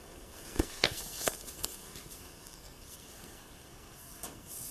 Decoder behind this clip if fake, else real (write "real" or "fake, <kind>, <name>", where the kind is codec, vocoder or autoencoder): fake, codec, SNAC